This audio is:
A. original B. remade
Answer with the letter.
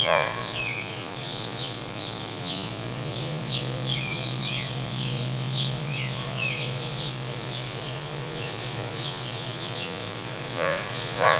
B